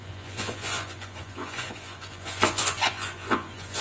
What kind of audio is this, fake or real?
fake